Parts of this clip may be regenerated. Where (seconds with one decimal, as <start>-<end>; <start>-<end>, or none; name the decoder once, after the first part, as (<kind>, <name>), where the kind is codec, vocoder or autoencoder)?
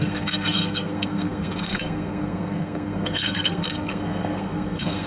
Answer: 0.0-5.1 (codec, SNAC)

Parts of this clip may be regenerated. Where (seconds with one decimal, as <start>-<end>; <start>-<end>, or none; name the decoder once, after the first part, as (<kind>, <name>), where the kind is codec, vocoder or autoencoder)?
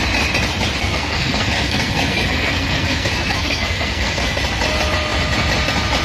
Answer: 0.8-4.4 (codec, SNAC)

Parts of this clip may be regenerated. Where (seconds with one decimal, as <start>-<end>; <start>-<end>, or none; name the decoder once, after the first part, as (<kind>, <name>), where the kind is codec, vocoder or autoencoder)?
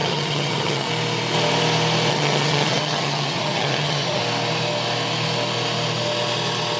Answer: 0.0-0.9 (vocoder, HiFi-GAN); 2.1-4.2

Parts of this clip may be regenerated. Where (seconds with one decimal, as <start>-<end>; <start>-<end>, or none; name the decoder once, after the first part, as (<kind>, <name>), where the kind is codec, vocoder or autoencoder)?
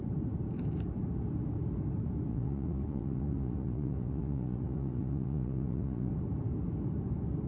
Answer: 2.3-6.1 (vocoder, Vocos)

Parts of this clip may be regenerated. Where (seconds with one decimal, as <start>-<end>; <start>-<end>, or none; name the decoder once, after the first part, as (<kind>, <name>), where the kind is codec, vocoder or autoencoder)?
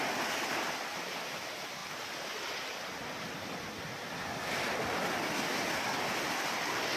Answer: none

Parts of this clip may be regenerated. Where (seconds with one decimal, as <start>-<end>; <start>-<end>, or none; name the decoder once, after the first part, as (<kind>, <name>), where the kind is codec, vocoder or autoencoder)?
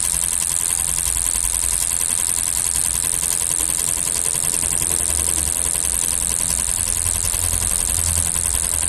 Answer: none